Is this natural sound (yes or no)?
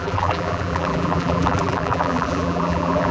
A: no